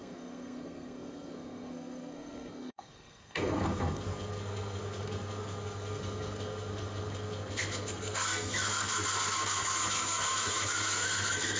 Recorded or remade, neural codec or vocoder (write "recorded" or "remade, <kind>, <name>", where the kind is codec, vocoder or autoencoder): remade, codec, SNAC